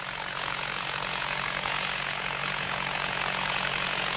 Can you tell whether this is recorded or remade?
remade